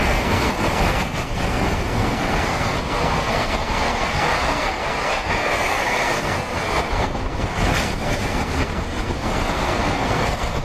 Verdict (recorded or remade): remade